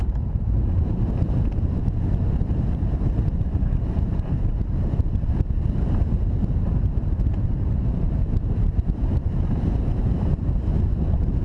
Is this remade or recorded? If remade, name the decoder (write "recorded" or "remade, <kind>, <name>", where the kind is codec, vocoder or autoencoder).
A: remade, vocoder, BigVGAN v2